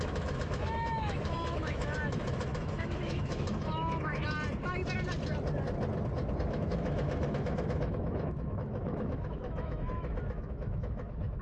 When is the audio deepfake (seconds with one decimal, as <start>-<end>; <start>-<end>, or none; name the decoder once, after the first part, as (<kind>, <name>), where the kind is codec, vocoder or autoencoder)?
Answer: 0.0-4.1 (autoencoder, DAC-VAE); 6.5-11.4